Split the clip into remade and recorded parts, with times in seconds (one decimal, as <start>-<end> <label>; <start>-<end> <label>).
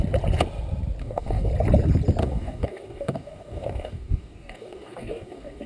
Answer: 0.0-1.0 recorded; 1.0-1.5 remade; 1.5-2.2 recorded; 2.2-5.7 remade